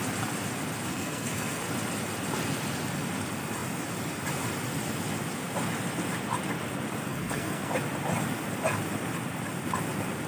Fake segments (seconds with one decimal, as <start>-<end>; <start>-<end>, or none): 0.9-1.6; 7.1-7.7